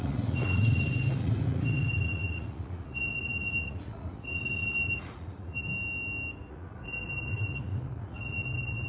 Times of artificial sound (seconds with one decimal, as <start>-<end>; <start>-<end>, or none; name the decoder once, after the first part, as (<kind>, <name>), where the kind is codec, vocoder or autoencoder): 0.0-5.7 (vocoder, Vocos); 6.5-8.9